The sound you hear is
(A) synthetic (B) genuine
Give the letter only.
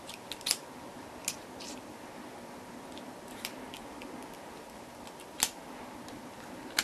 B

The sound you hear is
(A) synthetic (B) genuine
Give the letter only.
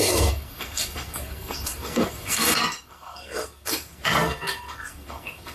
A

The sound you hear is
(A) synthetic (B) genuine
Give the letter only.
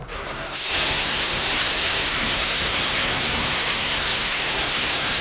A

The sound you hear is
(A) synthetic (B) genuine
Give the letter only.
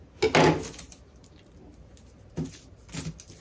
B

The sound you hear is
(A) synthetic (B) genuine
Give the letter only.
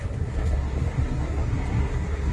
A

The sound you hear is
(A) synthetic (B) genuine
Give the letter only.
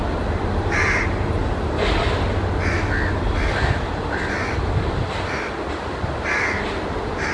B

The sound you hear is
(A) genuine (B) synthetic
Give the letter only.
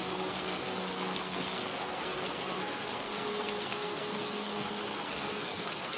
B